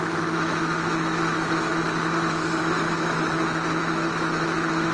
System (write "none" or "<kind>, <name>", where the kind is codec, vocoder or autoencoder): autoencoder, DAC-VAE